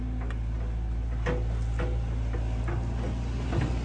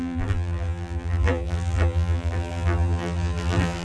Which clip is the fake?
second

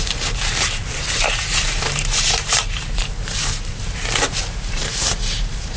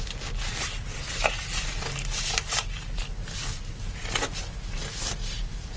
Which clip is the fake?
first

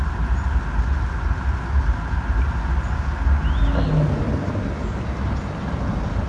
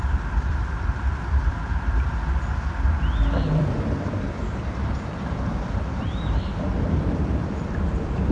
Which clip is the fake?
second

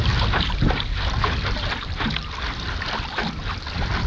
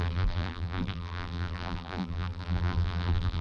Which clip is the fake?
second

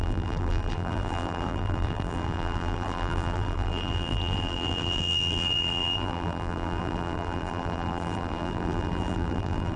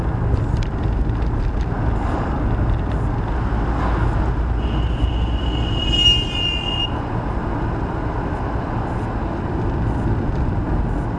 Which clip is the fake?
first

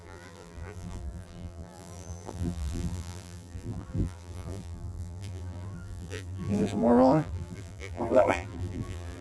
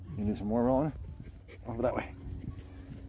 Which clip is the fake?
first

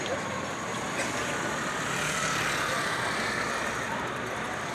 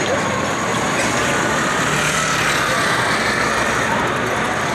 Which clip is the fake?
first